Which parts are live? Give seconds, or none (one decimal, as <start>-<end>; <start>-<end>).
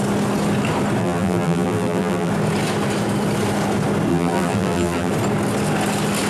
0.0-1.0; 2.3-4.1; 5.1-6.3